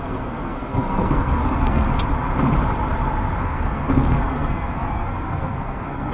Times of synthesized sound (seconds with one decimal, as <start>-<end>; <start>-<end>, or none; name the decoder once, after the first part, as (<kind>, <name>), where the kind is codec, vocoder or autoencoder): 0.0-1.9 (codec, SNAC); 3.4-6.1